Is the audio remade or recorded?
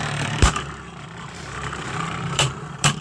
remade